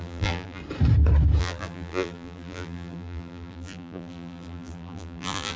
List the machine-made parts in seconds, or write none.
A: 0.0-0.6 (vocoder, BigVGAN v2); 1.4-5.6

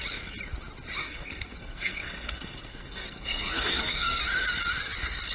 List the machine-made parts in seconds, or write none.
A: 1.0-4.2 (codec, SNAC)

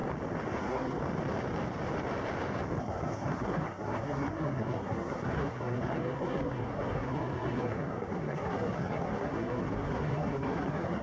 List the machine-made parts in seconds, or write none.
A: 0.6-1.0 (codec, SNAC); 2.8-11.0

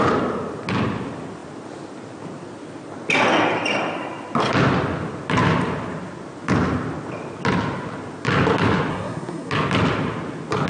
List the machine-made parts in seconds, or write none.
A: 8.9-9.5 (codec, SNAC)

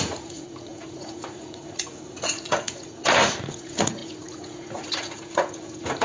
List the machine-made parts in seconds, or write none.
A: 0.0-6.0 (vocoder, Vocos)

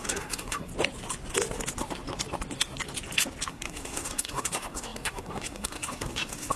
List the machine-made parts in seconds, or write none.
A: 0.0-0.7 (codec, SNAC); 3.5-6.6

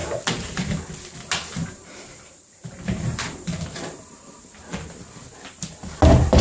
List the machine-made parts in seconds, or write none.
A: 0.0-0.9 (vocoder, BigVGAN v2); 1.6-4.5